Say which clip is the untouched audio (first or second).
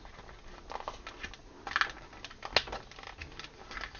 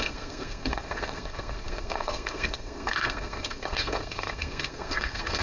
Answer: first